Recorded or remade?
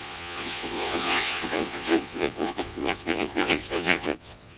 remade